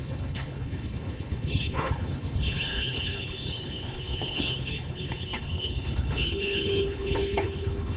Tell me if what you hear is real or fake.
fake